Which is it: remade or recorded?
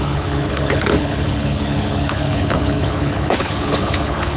remade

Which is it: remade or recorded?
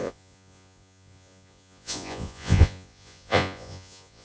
remade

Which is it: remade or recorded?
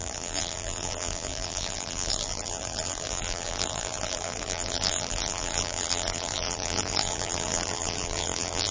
remade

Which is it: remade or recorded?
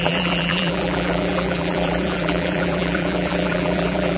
remade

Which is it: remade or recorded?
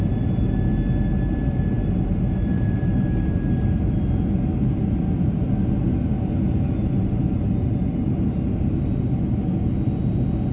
recorded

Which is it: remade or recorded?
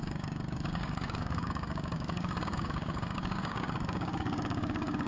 remade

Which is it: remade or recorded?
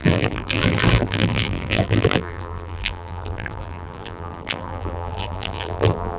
remade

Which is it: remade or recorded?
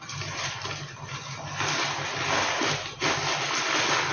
recorded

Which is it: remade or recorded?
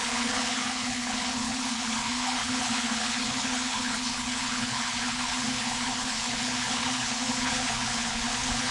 remade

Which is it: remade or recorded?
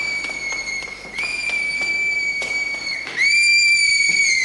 recorded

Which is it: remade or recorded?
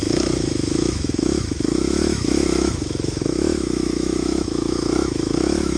remade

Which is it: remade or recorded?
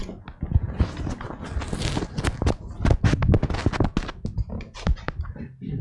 recorded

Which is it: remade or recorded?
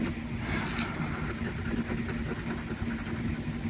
recorded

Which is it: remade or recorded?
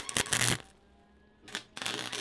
recorded